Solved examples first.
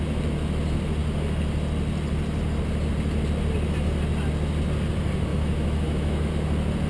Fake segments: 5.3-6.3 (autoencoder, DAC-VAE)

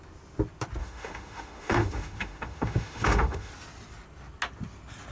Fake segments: 0.8-3.5 (autoencoder, DAC-VAE)

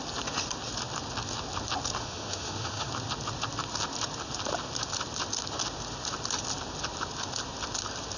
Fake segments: 2.0-2.9 (autoencoder, DAC-VAE)

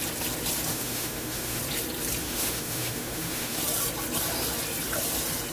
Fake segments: 0.7-1.6 (autoencoder, DAC-VAE); 2.2-3.6

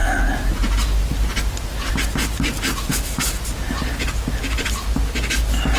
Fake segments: 2.9-3.4 (autoencoder, DAC-VAE)

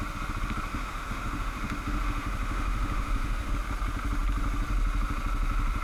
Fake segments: 0.7-3.5 (autoencoder, DAC-VAE)